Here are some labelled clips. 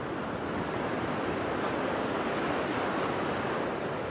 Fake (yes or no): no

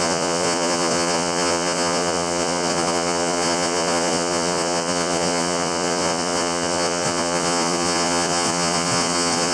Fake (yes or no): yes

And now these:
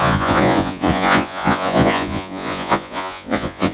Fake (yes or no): yes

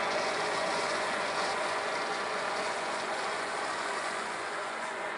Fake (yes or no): yes